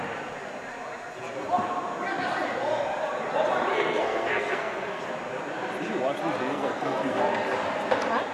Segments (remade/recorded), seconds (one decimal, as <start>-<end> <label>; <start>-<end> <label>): 0.0-3.7 recorded; 3.7-5.0 remade; 5.0-6.5 recorded; 6.5-7.2 remade; 7.2-8.3 recorded